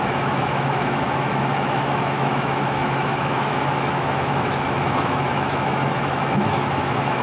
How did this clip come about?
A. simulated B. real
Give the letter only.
A